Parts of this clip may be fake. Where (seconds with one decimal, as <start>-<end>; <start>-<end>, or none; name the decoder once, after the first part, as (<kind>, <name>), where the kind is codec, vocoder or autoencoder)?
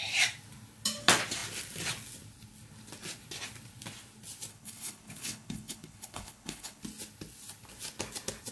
4.5-6.8 (codec, HILCodec)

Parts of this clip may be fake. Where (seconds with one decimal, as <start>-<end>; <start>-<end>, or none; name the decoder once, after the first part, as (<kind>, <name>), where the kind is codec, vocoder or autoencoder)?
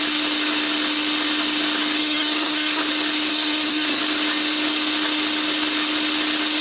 2.0-2.8 (codec, SNAC); 3.3-4.0